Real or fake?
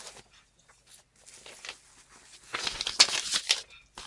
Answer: real